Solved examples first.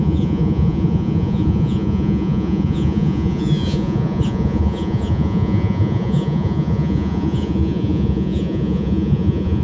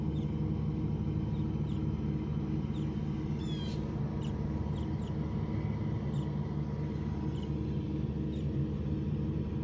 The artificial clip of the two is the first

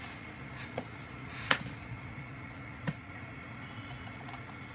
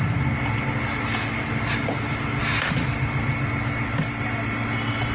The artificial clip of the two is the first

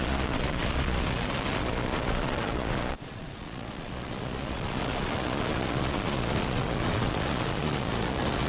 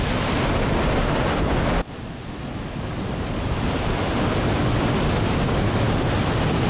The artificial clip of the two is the first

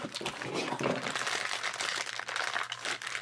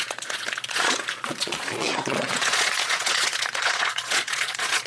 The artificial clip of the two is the second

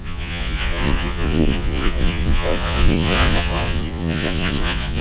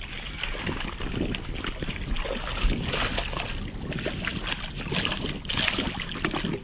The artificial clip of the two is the first